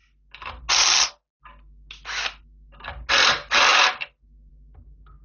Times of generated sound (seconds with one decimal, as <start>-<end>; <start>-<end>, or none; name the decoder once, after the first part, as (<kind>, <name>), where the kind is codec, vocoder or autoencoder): none